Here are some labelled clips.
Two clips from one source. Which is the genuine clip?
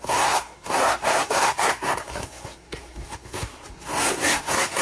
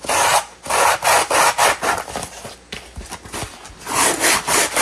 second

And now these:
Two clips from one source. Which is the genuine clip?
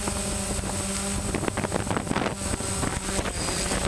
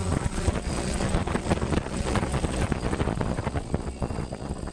first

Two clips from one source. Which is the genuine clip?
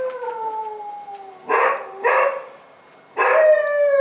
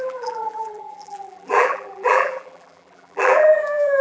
first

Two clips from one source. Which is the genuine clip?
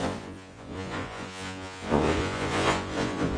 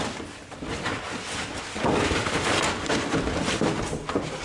second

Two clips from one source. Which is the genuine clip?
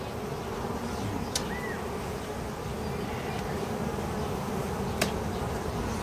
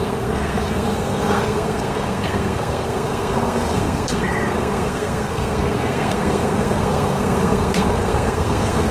first